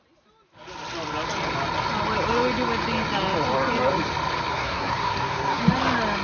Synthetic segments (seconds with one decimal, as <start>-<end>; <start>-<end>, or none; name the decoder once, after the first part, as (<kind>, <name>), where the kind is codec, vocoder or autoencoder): 4.5-5.6 (codec, SNAC)